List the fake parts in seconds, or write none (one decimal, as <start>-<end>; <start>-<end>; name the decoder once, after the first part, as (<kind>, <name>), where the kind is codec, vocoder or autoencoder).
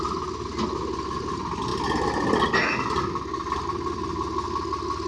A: none